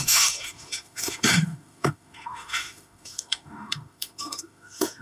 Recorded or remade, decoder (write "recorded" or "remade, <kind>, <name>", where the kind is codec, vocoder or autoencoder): remade, autoencoder, DAC-VAE